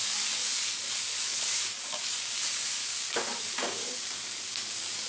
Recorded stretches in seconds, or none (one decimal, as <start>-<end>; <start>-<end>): none